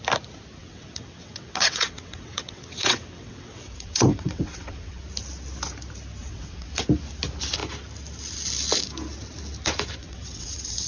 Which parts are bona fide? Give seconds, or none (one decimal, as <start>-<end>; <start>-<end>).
0.0-0.6; 5.0-6.2; 6.8-10.0